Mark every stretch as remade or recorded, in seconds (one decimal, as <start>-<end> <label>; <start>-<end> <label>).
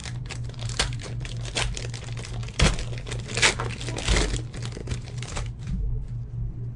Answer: 0.0-1.3 remade; 1.3-4.8 recorded; 4.8-6.1 remade; 6.1-6.8 recorded